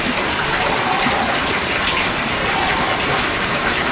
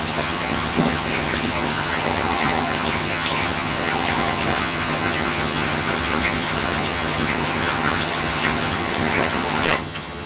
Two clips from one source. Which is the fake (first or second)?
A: second